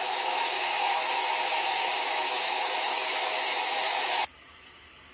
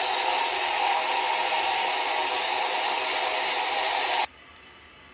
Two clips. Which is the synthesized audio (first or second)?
first